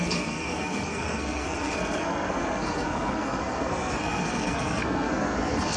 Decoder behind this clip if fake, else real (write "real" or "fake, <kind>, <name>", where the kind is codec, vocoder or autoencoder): fake, codec, SNAC